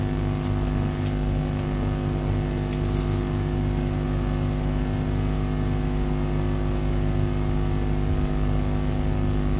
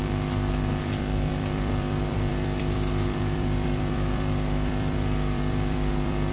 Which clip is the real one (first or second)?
first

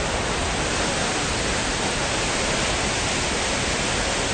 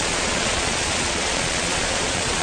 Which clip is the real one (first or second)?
first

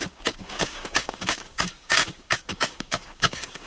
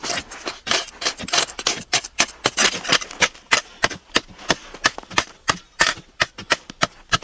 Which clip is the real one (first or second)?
second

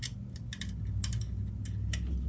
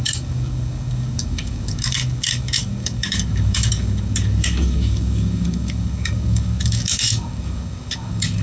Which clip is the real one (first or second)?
first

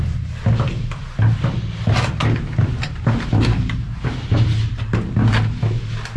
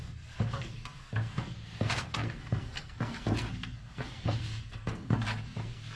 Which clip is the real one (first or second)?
first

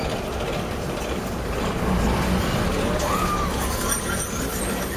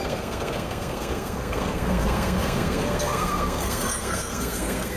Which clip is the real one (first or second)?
first